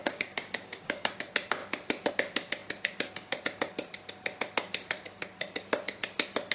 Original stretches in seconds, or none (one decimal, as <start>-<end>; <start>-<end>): 1.2-6.5